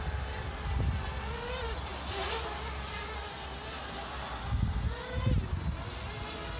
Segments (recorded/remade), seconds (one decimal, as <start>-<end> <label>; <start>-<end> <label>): 0.0-6.6 recorded